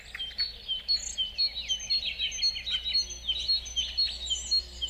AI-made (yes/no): no